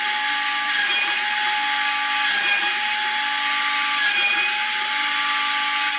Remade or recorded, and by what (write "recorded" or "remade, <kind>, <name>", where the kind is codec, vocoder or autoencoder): recorded